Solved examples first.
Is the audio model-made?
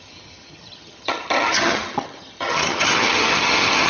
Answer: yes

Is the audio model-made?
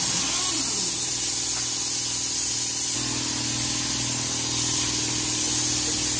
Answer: no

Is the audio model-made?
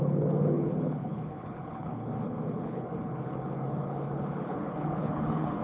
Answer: yes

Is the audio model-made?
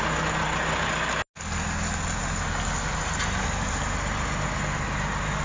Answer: no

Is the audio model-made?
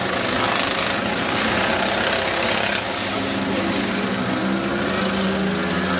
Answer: no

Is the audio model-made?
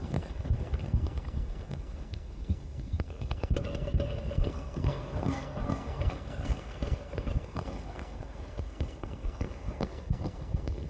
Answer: yes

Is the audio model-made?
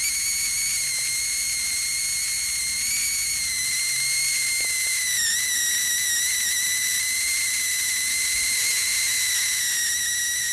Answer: no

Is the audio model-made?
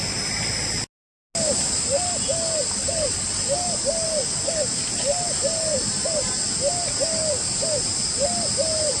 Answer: no